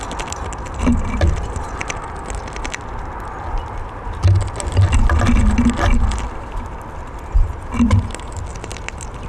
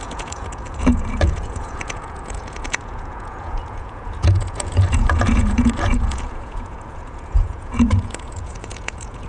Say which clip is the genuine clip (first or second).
first